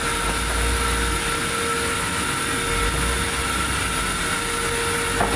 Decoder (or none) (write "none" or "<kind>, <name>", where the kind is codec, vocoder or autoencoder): none